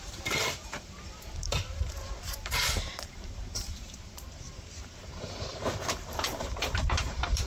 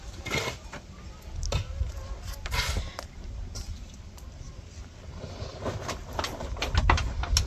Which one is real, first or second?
second